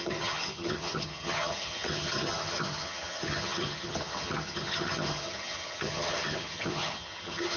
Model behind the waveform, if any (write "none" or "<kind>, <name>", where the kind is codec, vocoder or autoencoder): vocoder, HiFi-GAN